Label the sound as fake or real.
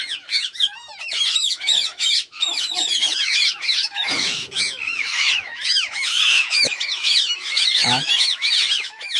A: fake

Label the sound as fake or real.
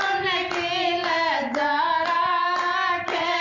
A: real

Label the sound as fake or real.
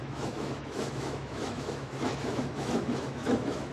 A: fake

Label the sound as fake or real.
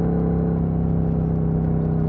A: real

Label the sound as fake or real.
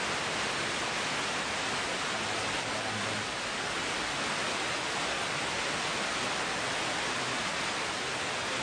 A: real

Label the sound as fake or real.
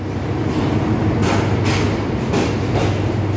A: real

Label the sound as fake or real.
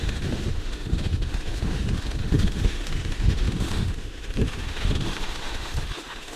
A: fake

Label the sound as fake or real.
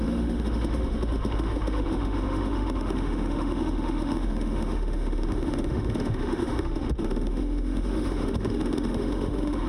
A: fake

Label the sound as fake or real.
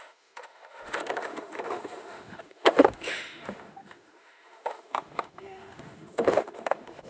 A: fake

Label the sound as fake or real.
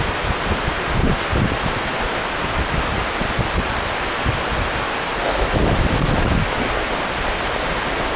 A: real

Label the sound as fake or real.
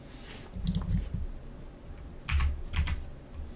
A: real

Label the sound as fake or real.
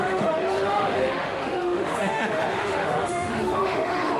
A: fake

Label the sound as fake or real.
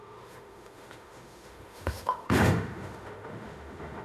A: fake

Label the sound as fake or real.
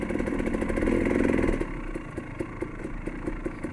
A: real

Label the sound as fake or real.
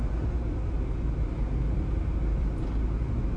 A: real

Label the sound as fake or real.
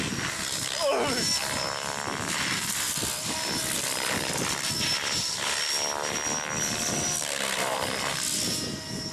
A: real